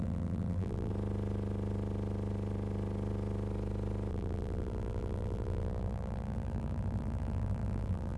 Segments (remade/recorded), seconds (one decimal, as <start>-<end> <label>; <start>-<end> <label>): 0.0-0.9 remade; 0.9-4.1 recorded; 4.1-8.2 remade